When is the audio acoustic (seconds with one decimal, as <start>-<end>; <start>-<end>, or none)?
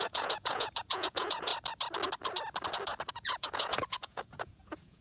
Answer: 1.5-3.1